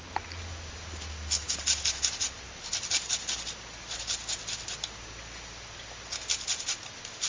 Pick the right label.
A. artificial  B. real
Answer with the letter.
B